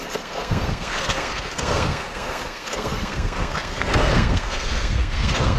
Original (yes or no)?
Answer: no